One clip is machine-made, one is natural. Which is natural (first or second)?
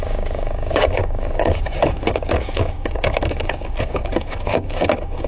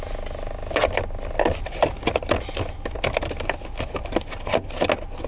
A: second